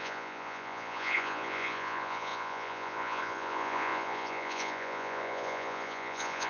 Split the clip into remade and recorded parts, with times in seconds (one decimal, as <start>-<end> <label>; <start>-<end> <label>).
0.0-6.5 remade